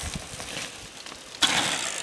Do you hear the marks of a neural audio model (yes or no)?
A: no